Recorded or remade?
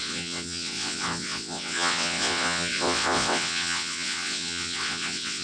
remade